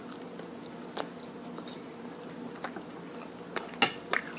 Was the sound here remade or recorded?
recorded